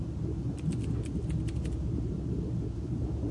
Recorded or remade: recorded